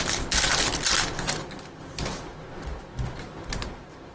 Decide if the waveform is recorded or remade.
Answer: recorded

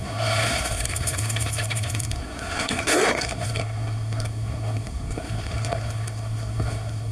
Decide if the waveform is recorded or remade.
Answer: remade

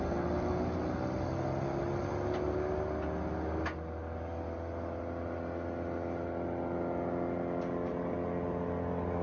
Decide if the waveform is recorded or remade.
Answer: recorded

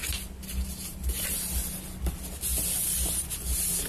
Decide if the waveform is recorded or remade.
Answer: recorded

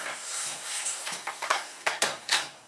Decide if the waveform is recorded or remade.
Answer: remade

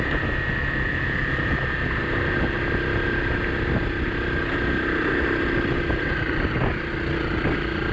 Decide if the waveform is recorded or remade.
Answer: recorded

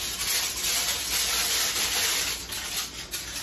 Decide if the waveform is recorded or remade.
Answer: recorded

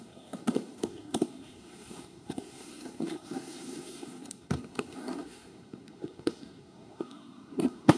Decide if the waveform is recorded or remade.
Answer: remade